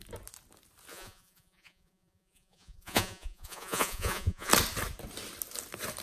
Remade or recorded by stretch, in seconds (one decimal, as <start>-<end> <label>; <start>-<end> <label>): 0.0-0.9 recorded; 0.9-4.5 remade; 4.5-6.0 recorded